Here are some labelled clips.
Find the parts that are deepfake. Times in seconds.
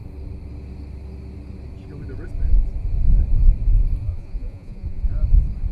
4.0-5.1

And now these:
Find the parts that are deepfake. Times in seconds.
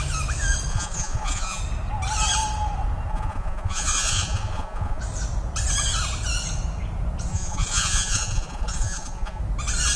0.7-1.6; 3.1-5.0; 7.3-9.4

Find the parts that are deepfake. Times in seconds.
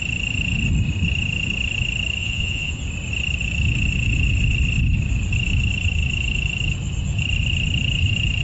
2.2-2.8